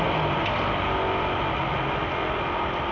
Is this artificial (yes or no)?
no